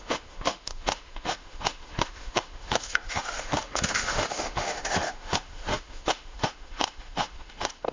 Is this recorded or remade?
remade